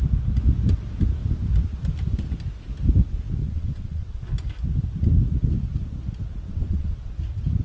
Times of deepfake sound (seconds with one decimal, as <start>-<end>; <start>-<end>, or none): 3.4-4.2; 6.5-7.1